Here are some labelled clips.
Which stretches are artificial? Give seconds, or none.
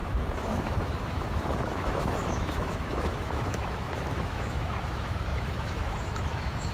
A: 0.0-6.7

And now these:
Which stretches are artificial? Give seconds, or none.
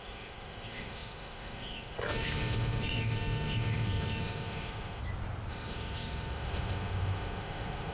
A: 0.0-5.0; 5.5-7.9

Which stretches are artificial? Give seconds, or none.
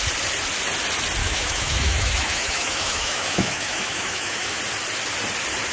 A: 1.2-4.6